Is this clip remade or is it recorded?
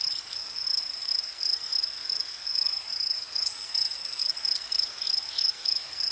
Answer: remade